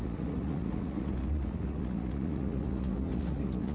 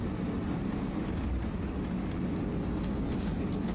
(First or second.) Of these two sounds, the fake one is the first